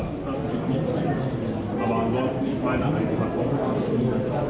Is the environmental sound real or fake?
real